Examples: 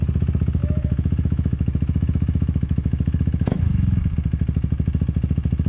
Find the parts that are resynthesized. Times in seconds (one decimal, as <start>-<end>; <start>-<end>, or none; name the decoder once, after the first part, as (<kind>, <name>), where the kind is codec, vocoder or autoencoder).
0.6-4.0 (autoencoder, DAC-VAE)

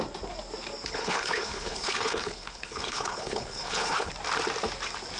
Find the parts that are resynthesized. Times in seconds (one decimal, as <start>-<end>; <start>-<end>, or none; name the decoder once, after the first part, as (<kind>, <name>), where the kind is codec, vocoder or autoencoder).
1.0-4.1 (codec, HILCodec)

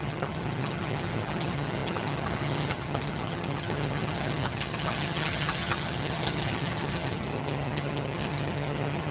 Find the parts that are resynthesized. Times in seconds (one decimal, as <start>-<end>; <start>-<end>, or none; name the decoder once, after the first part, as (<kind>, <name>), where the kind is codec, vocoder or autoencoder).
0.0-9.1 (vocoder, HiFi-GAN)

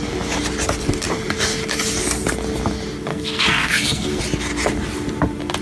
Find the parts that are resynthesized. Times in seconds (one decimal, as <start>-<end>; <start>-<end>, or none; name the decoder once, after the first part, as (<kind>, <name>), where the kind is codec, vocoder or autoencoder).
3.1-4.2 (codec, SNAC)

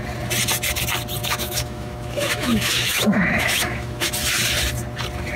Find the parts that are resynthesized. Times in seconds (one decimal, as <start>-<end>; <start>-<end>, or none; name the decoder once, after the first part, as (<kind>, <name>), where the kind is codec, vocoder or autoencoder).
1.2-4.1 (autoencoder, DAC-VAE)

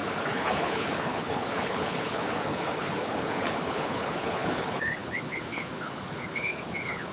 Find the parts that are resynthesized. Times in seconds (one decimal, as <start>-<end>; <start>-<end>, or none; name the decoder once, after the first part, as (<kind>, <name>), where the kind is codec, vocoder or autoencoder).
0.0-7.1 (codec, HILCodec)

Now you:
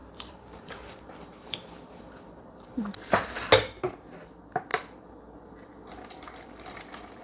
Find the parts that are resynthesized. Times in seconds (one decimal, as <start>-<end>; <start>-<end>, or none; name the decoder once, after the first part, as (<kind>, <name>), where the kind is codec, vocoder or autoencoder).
0.0-2.8 (vocoder, BigVGAN v2); 4.7-7.2